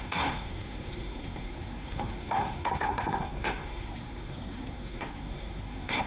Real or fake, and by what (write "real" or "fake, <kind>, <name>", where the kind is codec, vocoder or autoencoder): fake, codec, SNAC